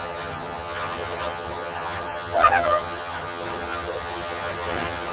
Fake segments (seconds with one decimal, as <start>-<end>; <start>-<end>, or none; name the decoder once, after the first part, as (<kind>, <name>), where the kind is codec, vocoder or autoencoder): 0.0-5.1 (vocoder, HiFi-GAN)